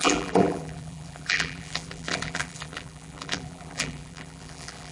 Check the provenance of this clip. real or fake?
fake